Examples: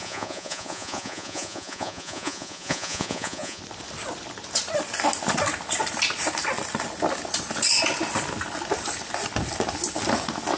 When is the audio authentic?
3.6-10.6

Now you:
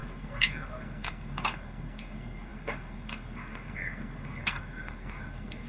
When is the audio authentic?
none

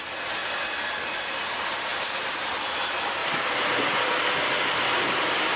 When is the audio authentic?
0.0-1.9; 2.5-3.2; 4.1-5.6